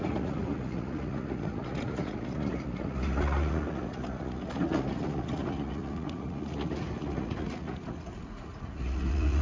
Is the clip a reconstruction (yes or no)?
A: yes